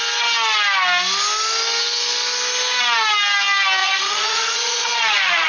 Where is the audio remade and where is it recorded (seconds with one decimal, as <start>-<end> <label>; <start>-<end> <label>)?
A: 0.0-3.8 recorded; 3.8-5.5 remade